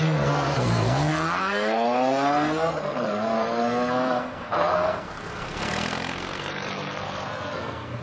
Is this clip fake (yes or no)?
yes